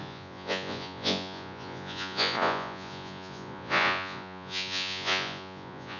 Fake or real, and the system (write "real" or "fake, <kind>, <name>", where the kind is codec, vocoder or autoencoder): fake, vocoder, Vocos